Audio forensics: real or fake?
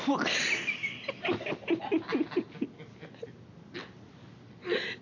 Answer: real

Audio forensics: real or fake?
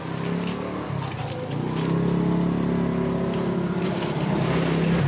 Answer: real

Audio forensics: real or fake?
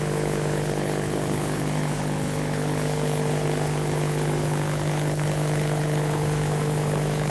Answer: fake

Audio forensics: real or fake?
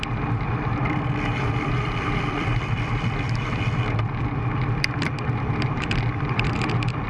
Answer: fake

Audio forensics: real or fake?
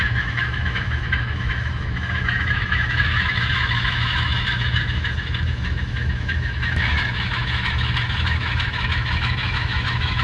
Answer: fake